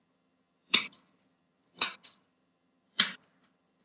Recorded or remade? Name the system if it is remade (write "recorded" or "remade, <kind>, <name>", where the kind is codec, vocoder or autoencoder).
remade, vocoder, HiFi-GAN